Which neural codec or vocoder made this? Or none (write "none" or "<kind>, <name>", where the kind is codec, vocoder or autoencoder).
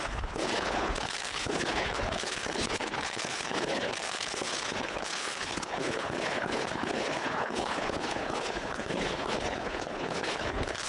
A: codec, HILCodec